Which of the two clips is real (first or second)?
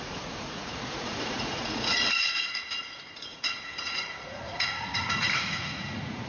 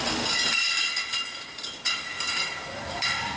second